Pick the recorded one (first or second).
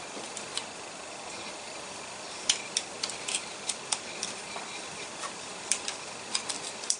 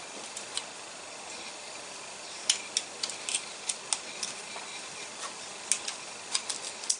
second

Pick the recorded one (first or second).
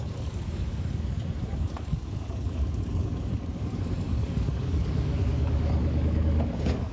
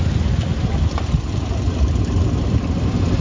second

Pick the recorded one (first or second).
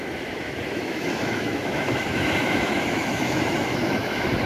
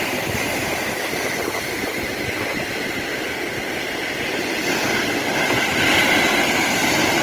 second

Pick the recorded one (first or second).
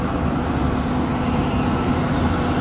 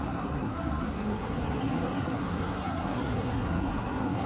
first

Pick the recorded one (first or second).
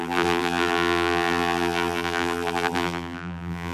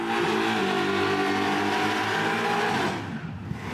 second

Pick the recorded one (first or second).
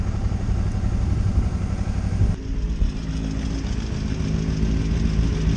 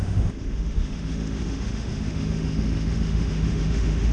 first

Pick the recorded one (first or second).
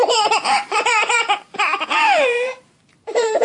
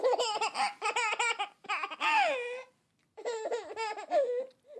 second